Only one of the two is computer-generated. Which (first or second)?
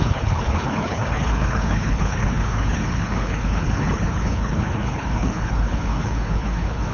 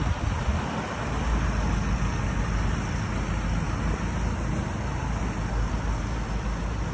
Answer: first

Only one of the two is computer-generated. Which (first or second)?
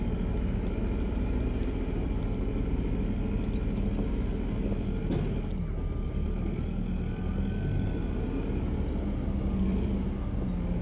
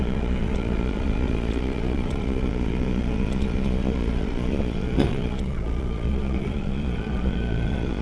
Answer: second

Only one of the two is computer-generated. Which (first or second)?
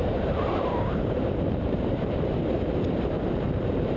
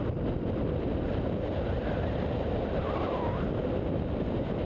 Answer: first